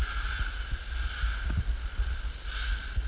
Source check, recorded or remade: recorded